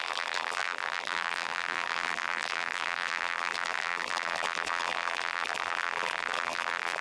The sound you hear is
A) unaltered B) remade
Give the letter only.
B